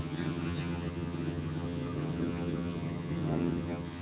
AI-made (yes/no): yes